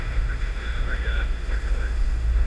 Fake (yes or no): yes